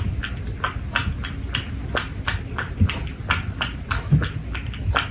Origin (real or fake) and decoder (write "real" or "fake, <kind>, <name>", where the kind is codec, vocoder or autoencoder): real